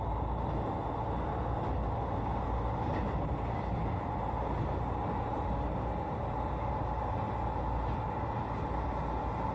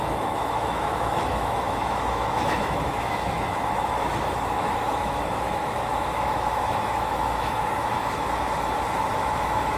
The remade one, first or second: second